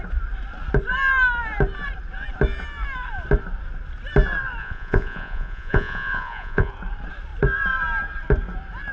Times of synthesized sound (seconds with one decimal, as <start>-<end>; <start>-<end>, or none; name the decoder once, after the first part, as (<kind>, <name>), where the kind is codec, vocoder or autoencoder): 4.6-6.7 (vocoder, Vocos)